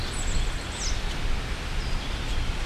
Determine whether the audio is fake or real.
real